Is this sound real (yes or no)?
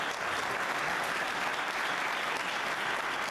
yes